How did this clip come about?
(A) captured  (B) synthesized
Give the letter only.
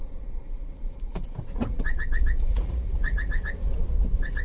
B